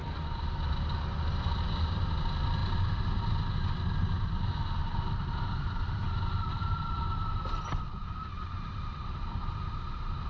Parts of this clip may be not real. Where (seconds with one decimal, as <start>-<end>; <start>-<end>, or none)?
none